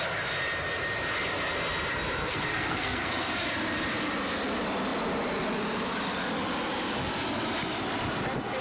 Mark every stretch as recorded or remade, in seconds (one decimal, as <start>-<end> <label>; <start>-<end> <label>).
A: 0.0-2.2 recorded; 2.2-3.3 remade; 3.3-8.6 recorded